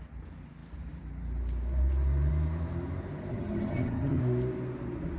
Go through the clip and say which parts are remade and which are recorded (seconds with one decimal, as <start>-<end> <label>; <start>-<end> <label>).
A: 0.0-3.3 recorded; 3.3-4.2 remade; 4.2-5.2 recorded